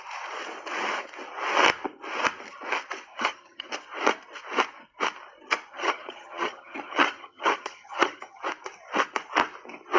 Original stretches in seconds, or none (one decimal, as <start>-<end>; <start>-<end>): 0.0-3.1; 3.7-5.7; 8.4-10.0